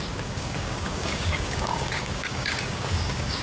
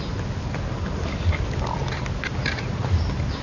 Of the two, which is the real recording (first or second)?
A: second